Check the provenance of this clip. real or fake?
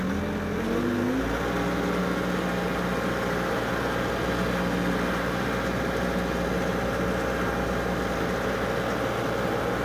real